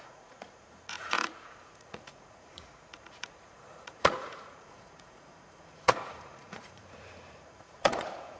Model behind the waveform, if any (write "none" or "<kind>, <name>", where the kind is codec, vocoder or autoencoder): vocoder, Vocos